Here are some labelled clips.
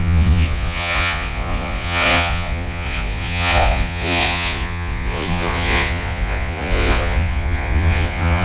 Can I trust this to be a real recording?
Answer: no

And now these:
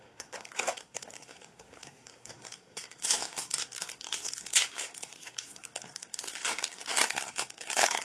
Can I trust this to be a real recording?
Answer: no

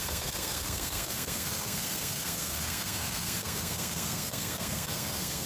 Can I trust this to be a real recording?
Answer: no